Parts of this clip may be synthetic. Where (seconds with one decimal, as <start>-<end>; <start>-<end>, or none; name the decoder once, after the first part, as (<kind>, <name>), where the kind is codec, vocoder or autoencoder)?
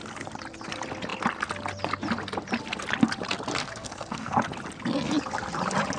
3.6-4.4 (codec, SNAC)